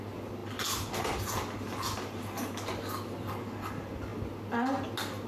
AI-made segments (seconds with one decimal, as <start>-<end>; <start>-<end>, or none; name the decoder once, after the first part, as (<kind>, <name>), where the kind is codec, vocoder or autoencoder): none